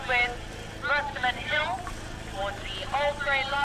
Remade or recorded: recorded